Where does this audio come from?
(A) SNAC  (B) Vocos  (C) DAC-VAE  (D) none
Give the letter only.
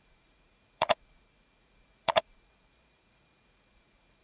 B